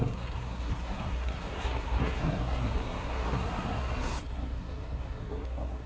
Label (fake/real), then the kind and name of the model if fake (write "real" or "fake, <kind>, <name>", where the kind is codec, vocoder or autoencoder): fake, codec, SNAC